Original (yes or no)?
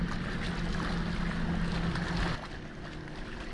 yes